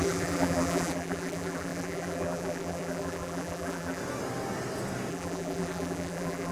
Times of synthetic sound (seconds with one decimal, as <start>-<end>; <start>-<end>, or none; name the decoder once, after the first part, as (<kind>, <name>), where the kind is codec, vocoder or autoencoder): 0.0-4.0 (vocoder, BigVGAN v2); 5.1-6.5